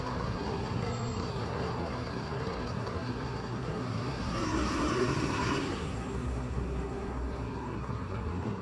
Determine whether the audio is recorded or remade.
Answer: remade